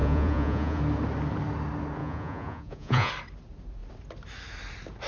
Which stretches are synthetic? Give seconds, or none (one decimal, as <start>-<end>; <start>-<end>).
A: 0.0-0.8; 2.0-3.1